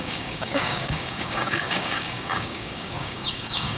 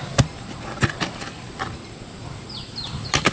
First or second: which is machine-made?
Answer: first